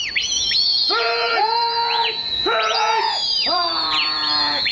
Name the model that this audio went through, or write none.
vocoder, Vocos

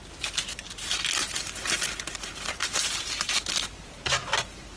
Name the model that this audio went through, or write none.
none